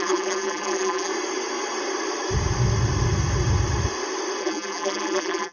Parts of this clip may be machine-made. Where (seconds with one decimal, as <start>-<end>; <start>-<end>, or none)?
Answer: 0.0-1.1; 4.4-5.5